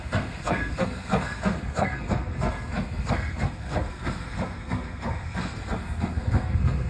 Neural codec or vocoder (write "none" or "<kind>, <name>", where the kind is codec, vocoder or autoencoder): codec, SNAC